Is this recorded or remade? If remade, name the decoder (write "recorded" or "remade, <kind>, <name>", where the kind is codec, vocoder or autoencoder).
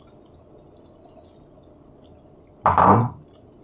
recorded